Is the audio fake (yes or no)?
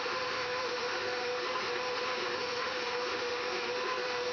yes